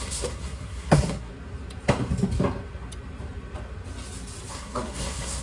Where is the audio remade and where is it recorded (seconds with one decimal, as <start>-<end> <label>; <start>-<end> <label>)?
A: 0.0-1.3 remade; 1.3-4.5 recorded; 4.5-5.4 remade